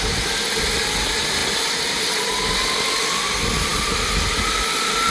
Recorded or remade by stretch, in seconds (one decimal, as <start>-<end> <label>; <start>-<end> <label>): 0.0-3.7 recorded; 3.7-5.1 remade